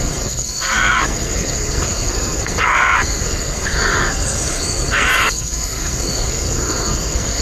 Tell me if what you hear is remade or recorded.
remade